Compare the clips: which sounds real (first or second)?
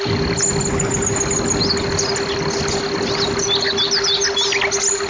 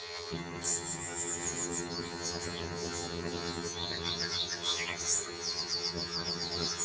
first